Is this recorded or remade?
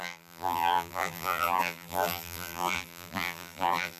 remade